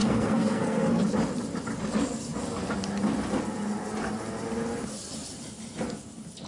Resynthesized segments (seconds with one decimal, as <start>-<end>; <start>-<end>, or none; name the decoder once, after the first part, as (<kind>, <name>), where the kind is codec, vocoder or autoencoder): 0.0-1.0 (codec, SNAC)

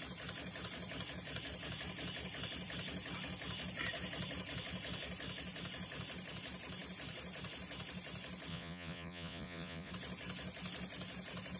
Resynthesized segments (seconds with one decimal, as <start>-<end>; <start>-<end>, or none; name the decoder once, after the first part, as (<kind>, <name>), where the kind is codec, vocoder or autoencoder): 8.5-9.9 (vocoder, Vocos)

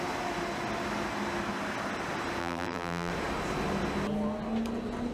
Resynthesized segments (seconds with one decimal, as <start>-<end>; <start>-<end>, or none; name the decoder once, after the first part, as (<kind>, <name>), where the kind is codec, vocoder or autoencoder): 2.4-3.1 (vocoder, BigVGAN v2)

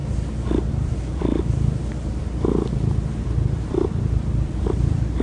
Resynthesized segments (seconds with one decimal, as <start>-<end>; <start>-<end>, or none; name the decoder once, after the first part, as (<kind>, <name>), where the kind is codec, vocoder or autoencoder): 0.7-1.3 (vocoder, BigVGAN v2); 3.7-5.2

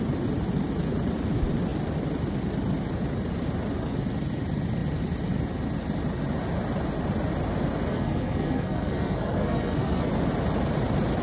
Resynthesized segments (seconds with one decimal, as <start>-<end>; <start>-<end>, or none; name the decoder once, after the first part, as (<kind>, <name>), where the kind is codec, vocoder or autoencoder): 7.9-10.1 (codec, SNAC)

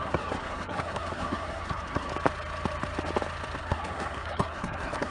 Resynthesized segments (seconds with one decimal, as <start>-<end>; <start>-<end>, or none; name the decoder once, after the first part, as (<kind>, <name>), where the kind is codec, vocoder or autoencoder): 0.0-2.1 (codec, SNAC); 3.6-5.1

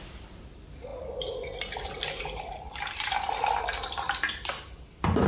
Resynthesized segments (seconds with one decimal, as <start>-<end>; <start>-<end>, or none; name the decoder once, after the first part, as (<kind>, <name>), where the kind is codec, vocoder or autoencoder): none

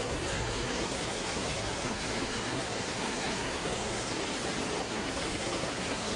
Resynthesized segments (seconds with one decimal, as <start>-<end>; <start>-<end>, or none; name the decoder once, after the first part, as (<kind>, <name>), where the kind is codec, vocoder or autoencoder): 0.0-4.2 (codec, SNAC); 4.8-6.2